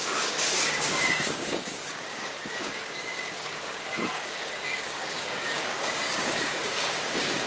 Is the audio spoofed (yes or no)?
yes